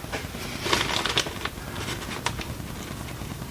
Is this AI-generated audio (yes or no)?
no